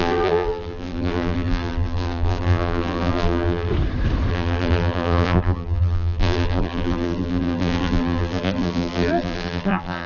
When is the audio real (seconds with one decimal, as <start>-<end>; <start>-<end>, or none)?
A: 3.7-4.3